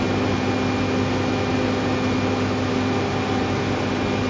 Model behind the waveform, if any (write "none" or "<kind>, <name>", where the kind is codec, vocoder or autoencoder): none